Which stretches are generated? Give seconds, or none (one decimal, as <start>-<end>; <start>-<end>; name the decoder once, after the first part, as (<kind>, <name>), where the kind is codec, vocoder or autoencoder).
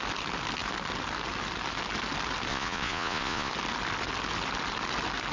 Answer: 2.5-3.5 (vocoder, Vocos)